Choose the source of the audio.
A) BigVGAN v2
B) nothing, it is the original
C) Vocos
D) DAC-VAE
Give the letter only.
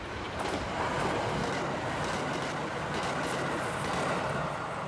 B